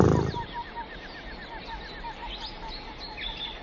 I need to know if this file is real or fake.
real